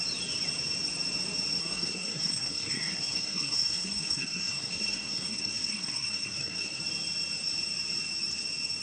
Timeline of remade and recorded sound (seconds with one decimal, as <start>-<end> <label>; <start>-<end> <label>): 0.0-1.6 recorded; 1.6-6.8 remade; 6.8-8.8 recorded